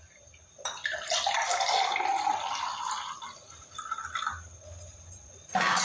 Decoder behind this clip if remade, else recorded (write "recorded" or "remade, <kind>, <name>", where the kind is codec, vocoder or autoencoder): recorded